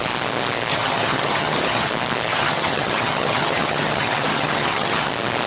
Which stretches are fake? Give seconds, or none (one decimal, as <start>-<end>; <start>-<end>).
0.7-1.9; 2.3-5.1